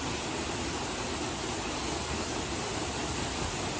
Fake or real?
real